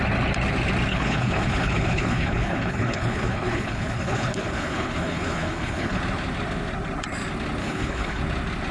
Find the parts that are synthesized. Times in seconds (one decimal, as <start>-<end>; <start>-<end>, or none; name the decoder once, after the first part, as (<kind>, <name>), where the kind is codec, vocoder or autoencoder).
0.9-6.0 (codec, HILCodec); 7.6-8.2